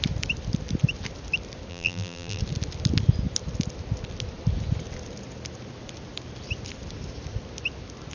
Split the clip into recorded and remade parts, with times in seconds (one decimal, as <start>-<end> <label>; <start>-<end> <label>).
0.0-1.7 recorded; 1.7-2.4 remade; 2.4-8.1 recorded